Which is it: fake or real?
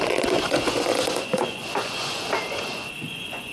fake